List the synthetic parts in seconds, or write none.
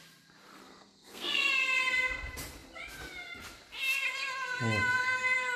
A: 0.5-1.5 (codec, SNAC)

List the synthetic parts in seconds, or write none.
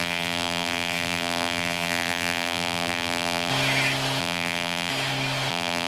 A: 0.0-3.5 (vocoder, BigVGAN v2); 4.2-4.9; 5.5-5.9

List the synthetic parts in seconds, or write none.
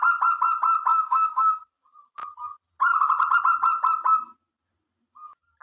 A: 0.9-1.6 (codec, SNAC)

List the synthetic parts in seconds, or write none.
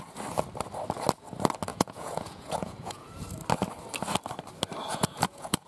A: 1.7-3.1 (vocoder, Vocos); 4.9-5.7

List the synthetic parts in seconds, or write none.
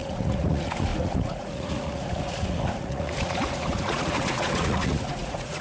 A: 0.0-5.6 (vocoder, Vocos)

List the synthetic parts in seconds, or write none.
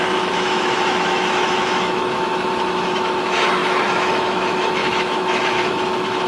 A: 0.0-6.3 (autoencoder, DAC-VAE)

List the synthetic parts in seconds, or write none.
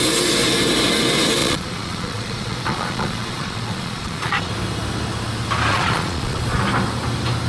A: 1.4-4.5 (vocoder, Vocos); 5.7-6.4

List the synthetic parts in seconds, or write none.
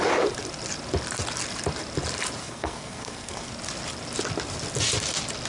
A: 2.4-3.5 (codec, SNAC)